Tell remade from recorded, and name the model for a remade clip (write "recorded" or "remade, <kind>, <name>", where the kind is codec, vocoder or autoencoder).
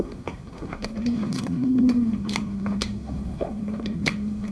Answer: remade, codec, SNAC